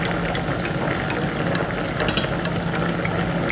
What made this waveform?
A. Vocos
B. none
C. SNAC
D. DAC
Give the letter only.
B